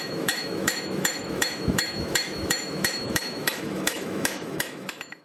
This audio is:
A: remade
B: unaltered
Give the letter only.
A